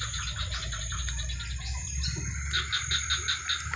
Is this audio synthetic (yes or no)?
no